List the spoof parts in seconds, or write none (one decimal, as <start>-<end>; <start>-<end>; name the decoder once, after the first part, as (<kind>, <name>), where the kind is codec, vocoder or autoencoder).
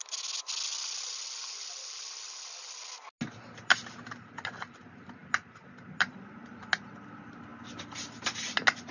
none